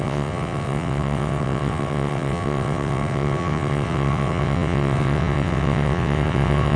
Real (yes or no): no